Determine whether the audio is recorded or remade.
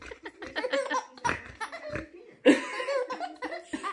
recorded